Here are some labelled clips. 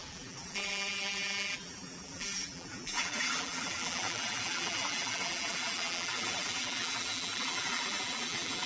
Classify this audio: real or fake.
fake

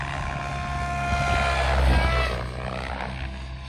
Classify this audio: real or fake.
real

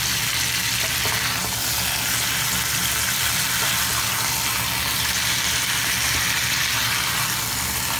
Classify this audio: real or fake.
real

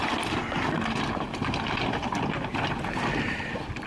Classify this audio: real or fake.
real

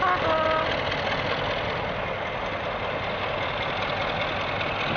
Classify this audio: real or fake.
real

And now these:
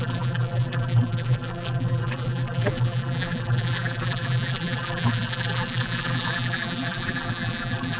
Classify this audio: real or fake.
fake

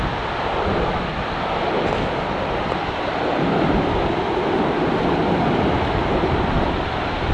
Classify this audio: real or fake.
fake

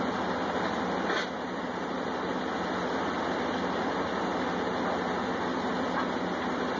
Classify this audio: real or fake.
real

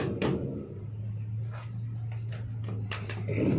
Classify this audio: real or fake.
real